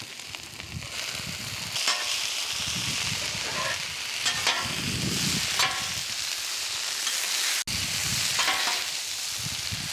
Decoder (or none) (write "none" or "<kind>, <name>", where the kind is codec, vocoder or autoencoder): none